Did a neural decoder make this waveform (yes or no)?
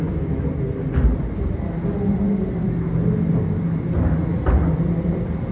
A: no